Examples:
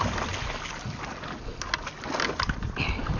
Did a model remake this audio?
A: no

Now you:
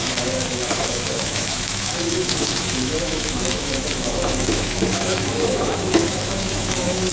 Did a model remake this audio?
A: yes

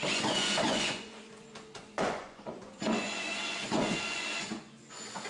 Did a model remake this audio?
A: yes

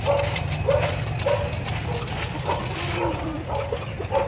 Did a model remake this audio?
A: no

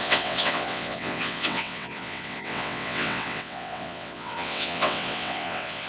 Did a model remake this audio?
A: yes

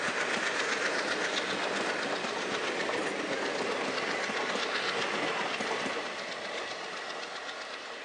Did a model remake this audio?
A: no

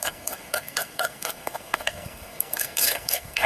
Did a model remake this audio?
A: yes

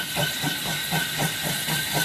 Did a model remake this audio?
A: no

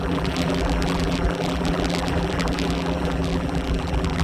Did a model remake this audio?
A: yes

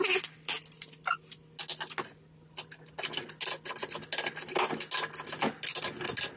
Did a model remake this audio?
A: no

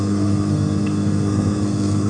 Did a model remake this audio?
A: yes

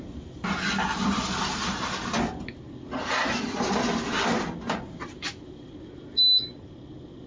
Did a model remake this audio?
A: no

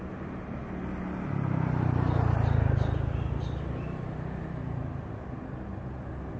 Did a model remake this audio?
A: no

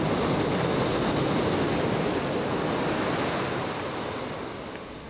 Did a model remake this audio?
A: no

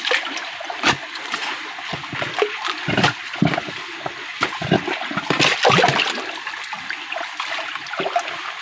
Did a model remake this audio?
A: no